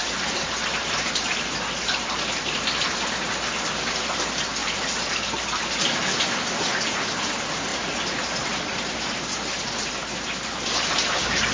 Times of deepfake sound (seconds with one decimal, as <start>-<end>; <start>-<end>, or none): 0.0-2.6; 7.7-9.9